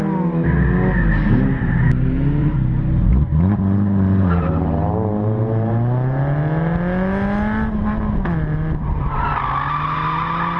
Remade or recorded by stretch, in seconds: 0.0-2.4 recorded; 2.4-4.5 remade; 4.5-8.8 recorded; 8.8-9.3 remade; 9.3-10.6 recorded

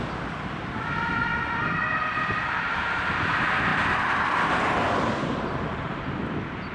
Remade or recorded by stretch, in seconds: 0.0-6.7 recorded